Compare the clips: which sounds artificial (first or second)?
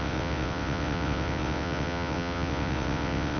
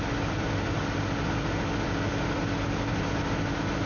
first